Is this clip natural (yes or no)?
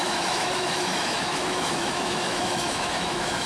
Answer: no